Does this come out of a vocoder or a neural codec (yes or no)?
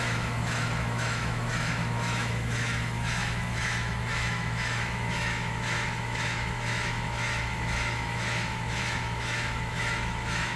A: yes